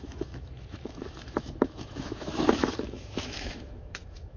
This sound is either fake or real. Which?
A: fake